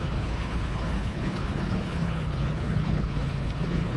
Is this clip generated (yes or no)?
yes